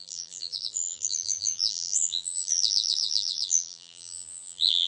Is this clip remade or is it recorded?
remade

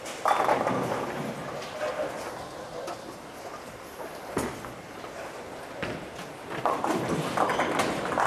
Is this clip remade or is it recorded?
recorded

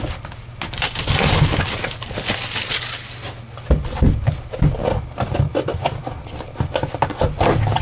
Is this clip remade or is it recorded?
recorded